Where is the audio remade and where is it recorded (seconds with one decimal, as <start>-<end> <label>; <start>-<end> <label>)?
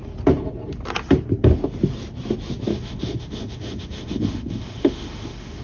0.0-2.7 recorded; 2.7-5.6 remade